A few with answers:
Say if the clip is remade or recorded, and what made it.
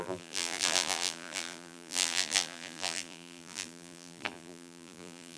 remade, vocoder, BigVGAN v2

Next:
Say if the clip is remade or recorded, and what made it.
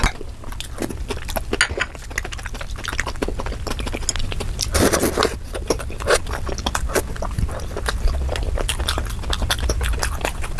recorded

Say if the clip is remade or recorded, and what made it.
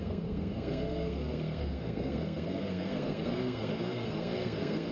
remade, codec, SNAC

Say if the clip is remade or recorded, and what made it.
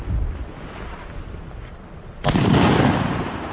recorded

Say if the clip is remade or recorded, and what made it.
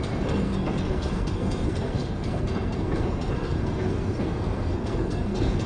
remade, codec, SNAC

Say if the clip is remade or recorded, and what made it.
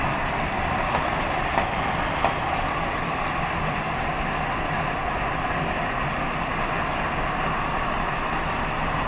recorded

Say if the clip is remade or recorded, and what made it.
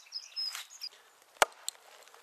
recorded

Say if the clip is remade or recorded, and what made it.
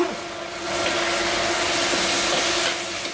recorded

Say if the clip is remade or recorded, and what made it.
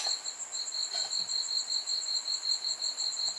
recorded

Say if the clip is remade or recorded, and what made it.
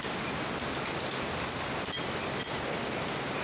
recorded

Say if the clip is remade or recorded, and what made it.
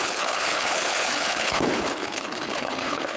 remade, codec, HILCodec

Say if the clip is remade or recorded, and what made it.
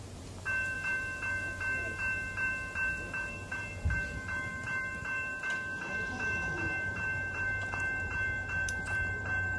remade, vocoder, BigVGAN v2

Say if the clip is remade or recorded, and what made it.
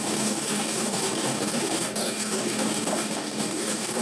remade, codec, DAC